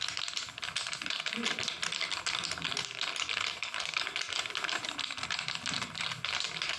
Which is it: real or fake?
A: real